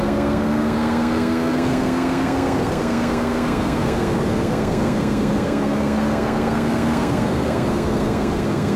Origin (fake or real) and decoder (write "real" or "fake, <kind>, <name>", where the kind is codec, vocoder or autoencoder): fake, codec, SNAC